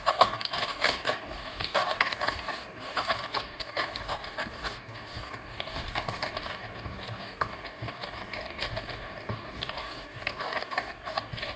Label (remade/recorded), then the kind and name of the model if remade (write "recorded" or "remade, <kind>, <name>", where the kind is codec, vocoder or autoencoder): remade, codec, DAC